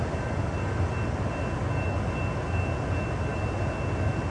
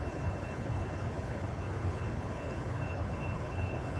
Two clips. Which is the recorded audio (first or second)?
first